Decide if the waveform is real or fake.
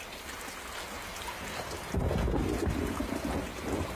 real